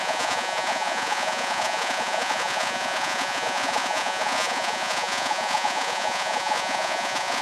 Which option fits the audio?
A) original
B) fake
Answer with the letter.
B